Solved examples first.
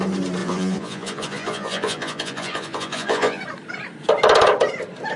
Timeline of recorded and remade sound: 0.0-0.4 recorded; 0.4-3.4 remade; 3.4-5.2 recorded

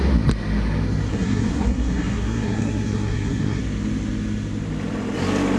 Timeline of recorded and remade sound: 0.0-1.1 recorded; 1.1-3.6 remade; 3.6-5.6 recorded

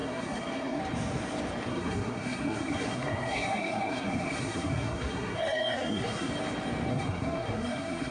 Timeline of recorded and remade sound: 0.0-0.8 remade; 0.8-1.7 recorded; 1.7-6.3 remade; 6.3-6.9 recorded; 6.9-8.1 remade

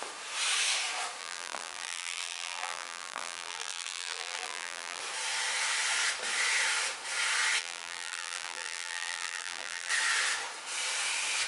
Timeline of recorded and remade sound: 0.0-1.2 recorded; 1.2-5.0 remade; 5.0-7.6 recorded; 7.6-9.9 remade; 9.9-11.5 recorded

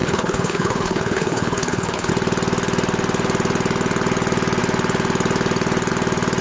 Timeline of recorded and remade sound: 0.0-2.1 remade; 2.1-6.4 recorded